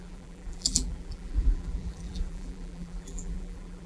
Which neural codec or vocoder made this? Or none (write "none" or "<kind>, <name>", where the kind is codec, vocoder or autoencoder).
vocoder, BigVGAN v2